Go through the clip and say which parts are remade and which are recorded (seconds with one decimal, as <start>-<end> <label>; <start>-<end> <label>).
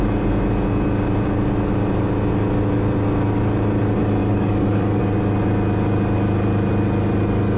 0.0-4.2 recorded; 4.2-5.0 remade; 5.0-7.6 recorded